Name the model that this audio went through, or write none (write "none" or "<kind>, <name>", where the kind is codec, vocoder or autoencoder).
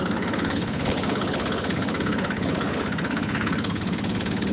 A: codec, HILCodec